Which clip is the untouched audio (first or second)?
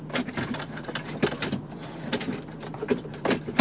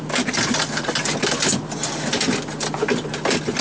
second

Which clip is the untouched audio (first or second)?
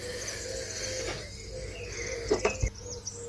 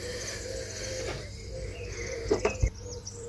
first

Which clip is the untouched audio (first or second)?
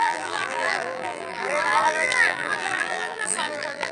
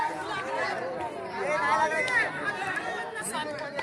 second